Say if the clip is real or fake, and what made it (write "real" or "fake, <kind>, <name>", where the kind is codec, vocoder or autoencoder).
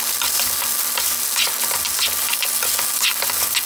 real